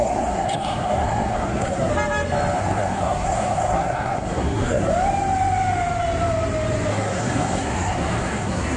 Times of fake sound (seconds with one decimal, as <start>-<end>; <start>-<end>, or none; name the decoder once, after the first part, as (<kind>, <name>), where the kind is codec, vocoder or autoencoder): 0.0-1.9 (codec, SNAC); 2.6-4.9; 6.9-8.8